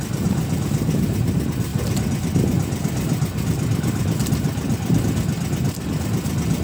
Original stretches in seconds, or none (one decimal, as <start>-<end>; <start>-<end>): 0.0-6.6